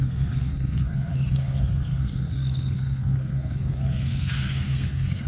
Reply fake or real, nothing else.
fake